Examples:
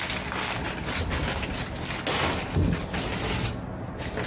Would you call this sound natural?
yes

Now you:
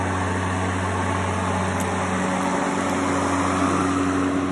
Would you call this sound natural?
yes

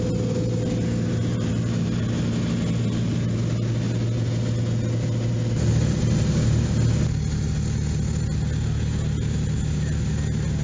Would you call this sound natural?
yes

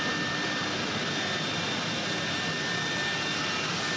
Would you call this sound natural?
yes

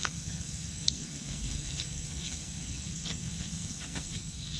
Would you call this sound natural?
no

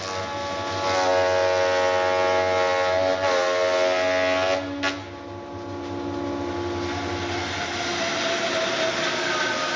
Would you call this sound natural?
yes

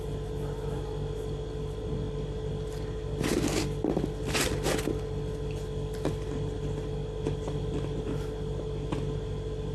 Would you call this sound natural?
yes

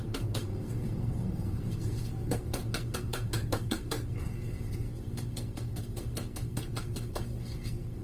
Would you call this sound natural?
no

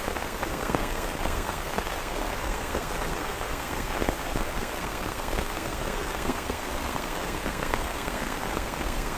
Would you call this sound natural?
no